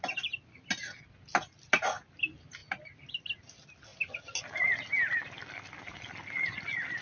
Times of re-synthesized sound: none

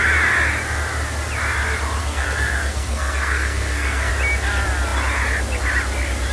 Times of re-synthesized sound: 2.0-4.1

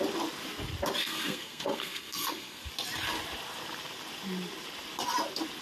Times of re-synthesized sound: 1.0-2.7